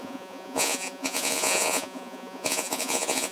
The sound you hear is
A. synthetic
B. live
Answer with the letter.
A